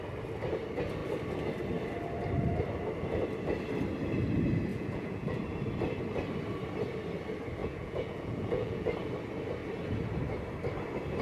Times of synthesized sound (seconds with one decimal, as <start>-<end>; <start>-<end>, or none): 4.7-5.4; 7.6-8.9

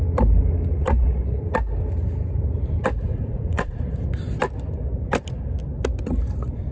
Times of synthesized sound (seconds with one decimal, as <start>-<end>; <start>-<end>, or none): 0.8-1.4; 3.1-3.8